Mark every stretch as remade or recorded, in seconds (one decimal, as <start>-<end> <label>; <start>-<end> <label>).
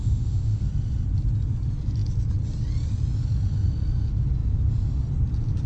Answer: 0.0-0.7 remade; 0.7-5.7 recorded